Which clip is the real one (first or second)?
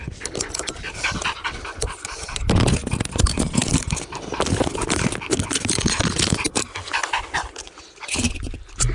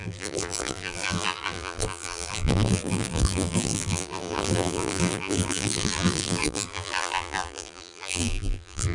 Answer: first